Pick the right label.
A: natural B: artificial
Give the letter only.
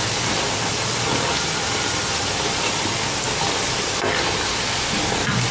A